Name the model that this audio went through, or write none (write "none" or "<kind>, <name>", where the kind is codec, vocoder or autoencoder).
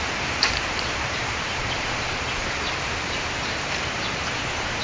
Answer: vocoder, BigVGAN v2